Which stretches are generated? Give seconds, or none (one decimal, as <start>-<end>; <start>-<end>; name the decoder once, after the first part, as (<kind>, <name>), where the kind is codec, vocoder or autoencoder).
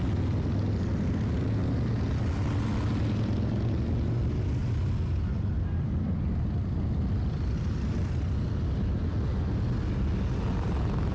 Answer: none